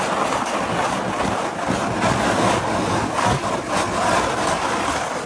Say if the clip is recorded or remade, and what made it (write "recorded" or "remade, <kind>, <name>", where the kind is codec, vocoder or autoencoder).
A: recorded